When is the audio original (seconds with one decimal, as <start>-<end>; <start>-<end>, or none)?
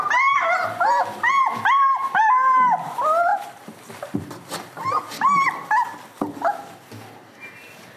0.0-8.0